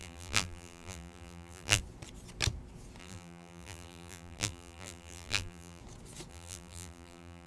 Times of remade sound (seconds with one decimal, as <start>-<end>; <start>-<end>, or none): 0.0-1.8; 3.0-5.8; 6.3-7.5